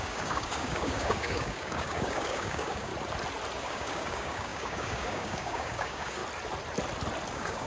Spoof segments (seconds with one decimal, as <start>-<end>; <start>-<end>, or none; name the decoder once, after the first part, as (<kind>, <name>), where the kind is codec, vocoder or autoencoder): 0.0-2.9 (codec, DAC); 3.6-6.2; 7.3-7.7